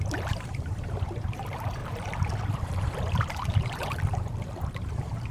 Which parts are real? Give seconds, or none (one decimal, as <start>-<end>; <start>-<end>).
none